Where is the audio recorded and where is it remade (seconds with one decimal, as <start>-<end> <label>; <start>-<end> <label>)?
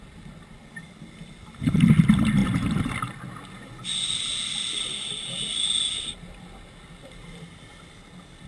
0.0-2.4 recorded; 2.4-2.9 remade; 2.9-8.5 recorded